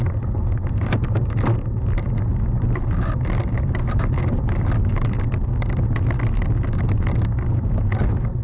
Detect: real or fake real